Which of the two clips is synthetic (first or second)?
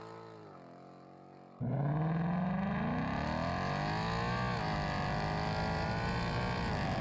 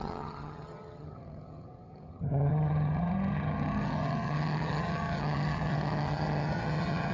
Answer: second